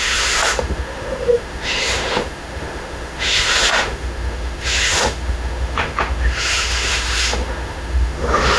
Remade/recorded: remade